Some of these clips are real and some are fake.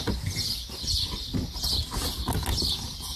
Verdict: real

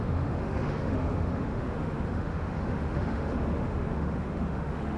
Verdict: fake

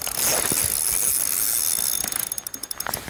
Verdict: real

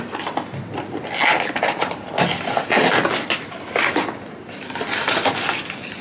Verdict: real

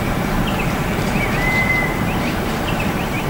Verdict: fake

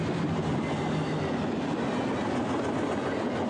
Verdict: real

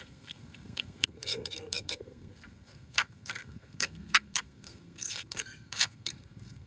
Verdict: fake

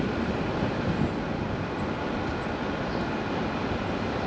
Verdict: real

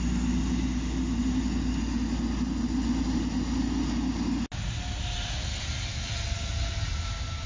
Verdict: real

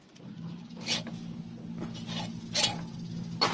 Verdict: real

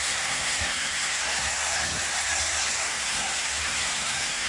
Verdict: fake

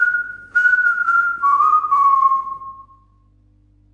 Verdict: real